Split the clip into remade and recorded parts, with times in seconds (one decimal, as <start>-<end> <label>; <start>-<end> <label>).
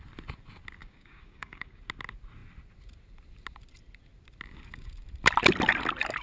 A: 0.0-0.8 recorded; 0.8-1.8 remade; 1.8-6.2 recorded